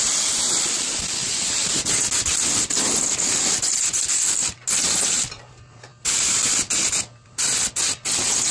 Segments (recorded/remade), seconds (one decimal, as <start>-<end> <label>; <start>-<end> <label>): 0.0-1.2 recorded; 1.2-1.9 remade; 1.9-5.9 recorded; 5.9-7.7 remade; 7.7-8.5 recorded